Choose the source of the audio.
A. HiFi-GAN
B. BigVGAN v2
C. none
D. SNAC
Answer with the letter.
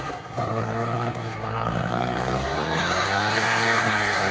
D